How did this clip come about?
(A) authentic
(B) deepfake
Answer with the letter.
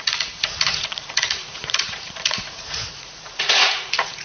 B